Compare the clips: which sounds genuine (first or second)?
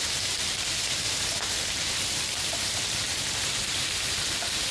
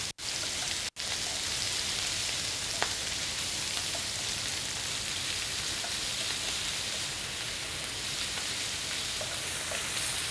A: second